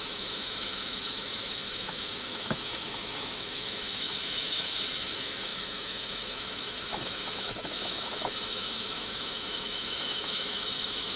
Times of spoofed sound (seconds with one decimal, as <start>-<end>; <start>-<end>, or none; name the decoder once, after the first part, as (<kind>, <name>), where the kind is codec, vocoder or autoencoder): 0.0-11.2 (autoencoder, DAC-VAE)